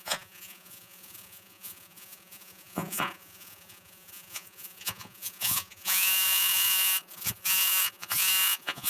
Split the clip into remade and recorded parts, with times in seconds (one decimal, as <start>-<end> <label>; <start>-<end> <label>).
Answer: 0.0-8.9 remade